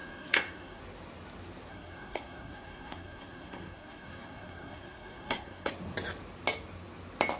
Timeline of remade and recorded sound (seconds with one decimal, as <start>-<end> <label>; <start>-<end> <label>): 0.0-0.8 remade; 0.8-1.7 recorded; 1.7-5.7 remade; 5.7-7.4 recorded